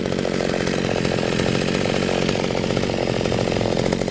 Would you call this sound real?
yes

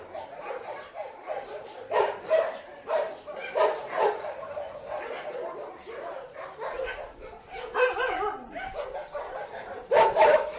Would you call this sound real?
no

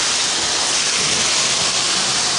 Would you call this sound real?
yes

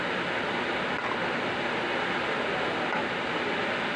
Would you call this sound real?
yes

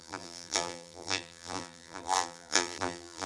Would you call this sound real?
no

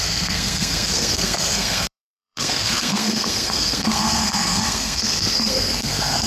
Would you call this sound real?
no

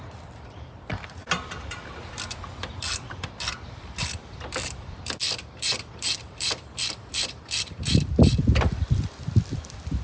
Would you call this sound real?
no